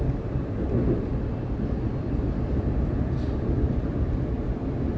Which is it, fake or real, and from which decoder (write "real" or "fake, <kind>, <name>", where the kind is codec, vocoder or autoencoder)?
real